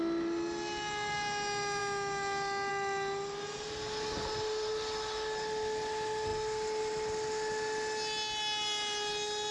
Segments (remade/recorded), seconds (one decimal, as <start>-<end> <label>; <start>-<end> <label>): 0.0-9.5 recorded